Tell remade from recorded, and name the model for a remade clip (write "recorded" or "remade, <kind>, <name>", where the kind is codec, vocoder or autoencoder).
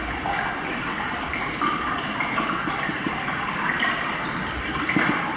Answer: recorded